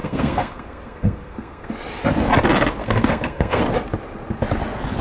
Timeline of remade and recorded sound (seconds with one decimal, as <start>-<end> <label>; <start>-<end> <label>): 0.0-1.7 remade; 1.7-2.8 recorded; 2.8-3.6 remade; 3.6-5.0 recorded